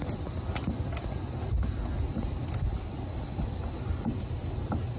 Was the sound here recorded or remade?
recorded